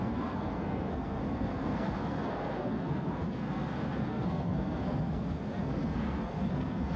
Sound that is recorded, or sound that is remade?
remade